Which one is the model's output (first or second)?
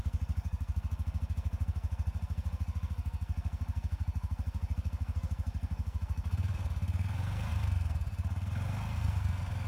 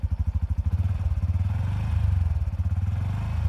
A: first